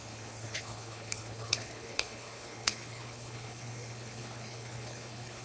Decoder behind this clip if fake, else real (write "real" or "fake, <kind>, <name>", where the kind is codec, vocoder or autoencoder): fake, codec, HILCodec